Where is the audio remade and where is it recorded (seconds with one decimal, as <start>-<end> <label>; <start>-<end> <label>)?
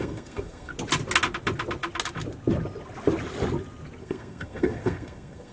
0.0-0.7 remade; 0.7-4.0 recorded; 4.0-5.5 remade